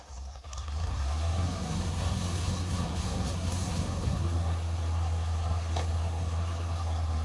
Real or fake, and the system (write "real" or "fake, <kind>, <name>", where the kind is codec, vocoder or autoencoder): fake, codec, SNAC